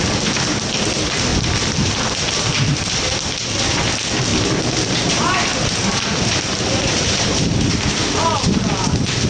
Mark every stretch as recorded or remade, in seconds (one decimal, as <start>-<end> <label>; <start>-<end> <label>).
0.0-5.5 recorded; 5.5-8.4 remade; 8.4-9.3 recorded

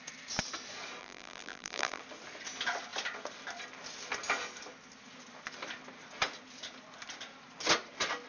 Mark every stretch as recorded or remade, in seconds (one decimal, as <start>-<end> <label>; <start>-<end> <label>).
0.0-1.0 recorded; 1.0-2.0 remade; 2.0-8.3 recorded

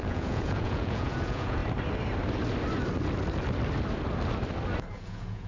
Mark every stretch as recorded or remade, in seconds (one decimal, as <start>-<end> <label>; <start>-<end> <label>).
0.0-1.6 remade; 1.6-4.9 recorded; 4.9-5.5 remade

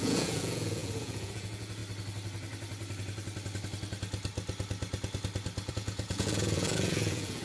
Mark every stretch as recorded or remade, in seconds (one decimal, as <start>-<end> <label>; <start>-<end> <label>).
0.0-1.8 remade; 1.8-5.7 recorded; 5.7-7.4 remade

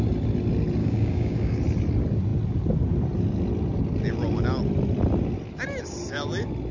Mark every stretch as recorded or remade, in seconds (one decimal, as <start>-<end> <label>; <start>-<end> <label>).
0.0-0.8 recorded; 0.8-1.6 remade; 1.6-6.7 recorded

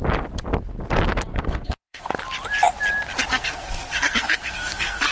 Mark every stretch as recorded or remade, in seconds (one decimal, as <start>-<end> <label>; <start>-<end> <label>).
0.0-1.3 recorded; 1.3-2.1 remade; 2.1-3.3 recorded; 3.3-5.1 remade